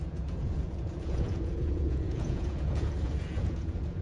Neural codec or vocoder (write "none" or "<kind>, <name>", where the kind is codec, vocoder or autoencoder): vocoder, Vocos